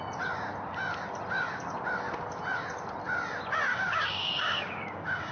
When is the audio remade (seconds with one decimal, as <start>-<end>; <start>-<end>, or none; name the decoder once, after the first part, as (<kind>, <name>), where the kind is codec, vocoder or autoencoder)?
3.7-5.3 (codec, DAC)

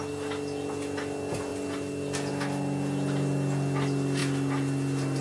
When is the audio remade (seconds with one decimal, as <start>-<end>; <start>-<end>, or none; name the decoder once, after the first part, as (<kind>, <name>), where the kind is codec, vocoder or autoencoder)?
none

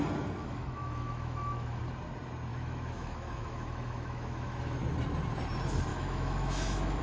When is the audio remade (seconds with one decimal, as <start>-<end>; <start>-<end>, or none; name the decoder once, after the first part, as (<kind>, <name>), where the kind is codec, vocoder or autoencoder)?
0.4-1.8 (autoencoder, DAC-VAE); 2.5-4.8; 5.9-7.0

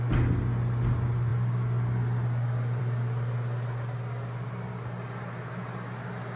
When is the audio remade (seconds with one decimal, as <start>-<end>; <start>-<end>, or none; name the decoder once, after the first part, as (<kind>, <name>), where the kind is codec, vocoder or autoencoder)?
none

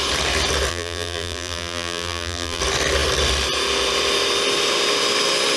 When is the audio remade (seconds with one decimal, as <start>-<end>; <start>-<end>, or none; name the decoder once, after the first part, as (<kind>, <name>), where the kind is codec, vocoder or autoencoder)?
0.7-2.6 (vocoder, BigVGAN v2)

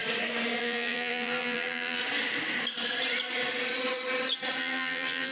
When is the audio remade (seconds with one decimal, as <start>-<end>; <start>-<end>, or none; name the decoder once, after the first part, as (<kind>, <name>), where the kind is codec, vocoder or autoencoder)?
0.6-2.0 (vocoder, BigVGAN v2); 4.6-5.3

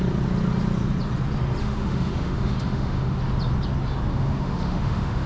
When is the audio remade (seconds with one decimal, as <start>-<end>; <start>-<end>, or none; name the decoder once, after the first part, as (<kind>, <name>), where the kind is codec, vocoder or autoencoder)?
1.6-3.2 (autoencoder, DAC-VAE); 4.1-5.3